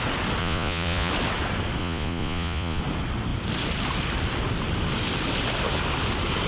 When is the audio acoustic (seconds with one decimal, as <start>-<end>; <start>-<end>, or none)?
0.0-0.4; 1.1-1.8; 2.8-6.5